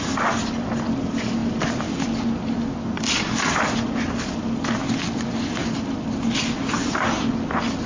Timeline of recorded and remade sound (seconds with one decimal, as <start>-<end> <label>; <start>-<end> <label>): 0.0-7.9 recorded